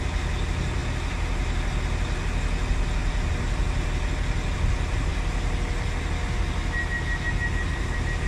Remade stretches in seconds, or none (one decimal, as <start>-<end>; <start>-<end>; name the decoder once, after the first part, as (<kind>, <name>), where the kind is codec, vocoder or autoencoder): none